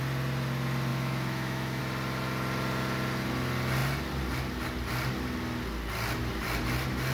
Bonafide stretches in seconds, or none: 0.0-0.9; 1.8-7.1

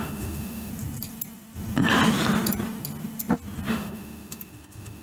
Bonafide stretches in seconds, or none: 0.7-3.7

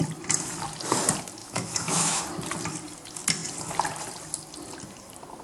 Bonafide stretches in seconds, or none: 0.0-1.4; 2.2-5.4

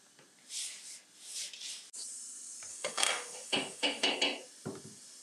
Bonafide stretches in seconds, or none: 0.0-2.7; 4.1-5.2

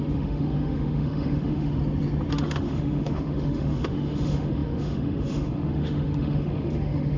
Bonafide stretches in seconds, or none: 1.8-2.3

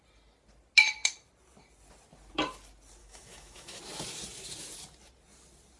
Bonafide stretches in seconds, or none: 0.0-3.0; 3.8-5.8